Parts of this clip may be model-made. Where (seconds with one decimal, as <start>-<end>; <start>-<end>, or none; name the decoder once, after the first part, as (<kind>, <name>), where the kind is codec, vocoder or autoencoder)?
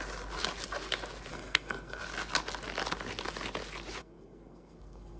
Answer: 1.3-2.0 (codec, SNAC); 4.0-5.2